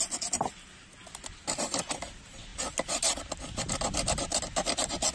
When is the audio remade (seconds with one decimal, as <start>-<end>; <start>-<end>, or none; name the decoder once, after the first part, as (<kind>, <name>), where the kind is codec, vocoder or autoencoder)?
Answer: none